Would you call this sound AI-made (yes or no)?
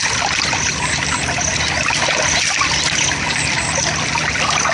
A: no